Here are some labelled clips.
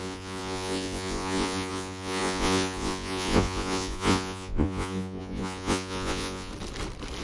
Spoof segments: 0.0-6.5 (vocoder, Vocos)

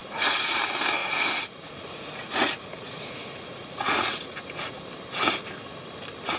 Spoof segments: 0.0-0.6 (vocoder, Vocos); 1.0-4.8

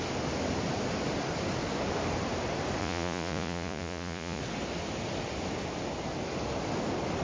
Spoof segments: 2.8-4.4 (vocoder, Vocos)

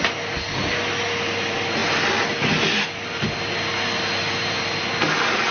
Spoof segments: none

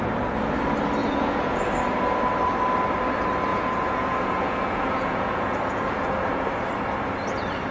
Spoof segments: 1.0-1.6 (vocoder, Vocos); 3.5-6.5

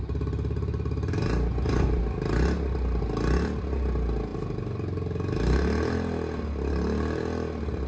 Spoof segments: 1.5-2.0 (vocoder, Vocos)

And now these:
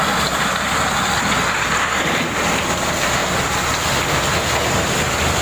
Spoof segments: none